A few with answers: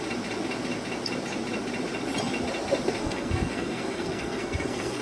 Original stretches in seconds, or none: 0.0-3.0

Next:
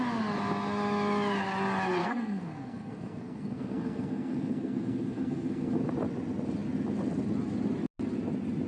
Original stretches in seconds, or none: 0.0-2.0; 5.8-8.7

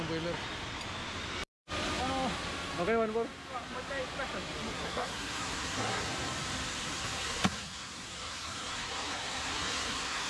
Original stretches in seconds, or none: 0.0-4.7; 6.1-6.8

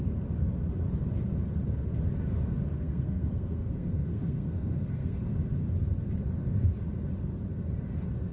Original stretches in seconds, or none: 0.0-2.7; 5.2-8.3

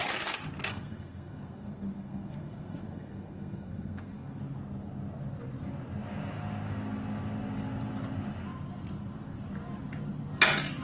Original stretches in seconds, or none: 0.0-0.7; 4.4-10.8

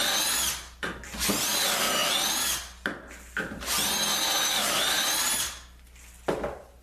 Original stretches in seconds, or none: 0.0-6.8

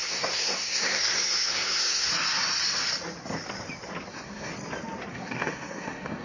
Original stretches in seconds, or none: 2.1-4.1; 4.5-5.1

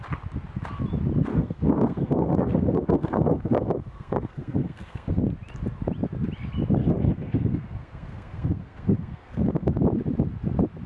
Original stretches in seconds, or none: 0.0-1.3; 5.2-6.8; 9.8-10.9